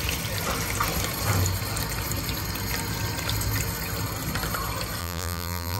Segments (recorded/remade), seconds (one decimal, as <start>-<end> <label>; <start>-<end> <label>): 0.0-5.0 recorded; 5.0-5.8 remade